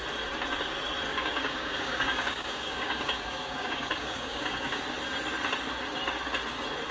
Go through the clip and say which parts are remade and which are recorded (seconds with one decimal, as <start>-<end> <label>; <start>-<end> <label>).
0.0-1.1 recorded; 1.1-4.8 remade; 4.8-6.9 recorded